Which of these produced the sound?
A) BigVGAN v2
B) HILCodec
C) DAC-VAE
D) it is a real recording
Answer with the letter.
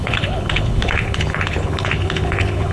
B